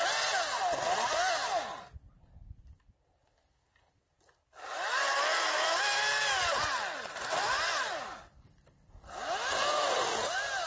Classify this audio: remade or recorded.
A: recorded